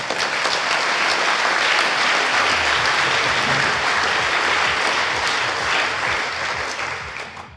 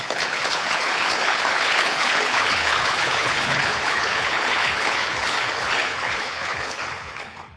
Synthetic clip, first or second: second